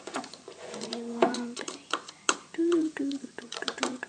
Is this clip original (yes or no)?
no